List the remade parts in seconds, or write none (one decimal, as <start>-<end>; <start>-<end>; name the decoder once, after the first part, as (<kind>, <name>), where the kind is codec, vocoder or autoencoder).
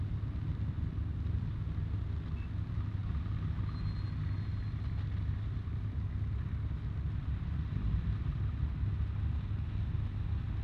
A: 3.0-3.6 (vocoder, BigVGAN v2); 4.5-9.0